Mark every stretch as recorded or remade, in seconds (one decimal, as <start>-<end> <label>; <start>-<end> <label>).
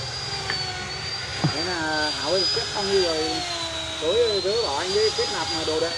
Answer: 0.0-6.0 recorded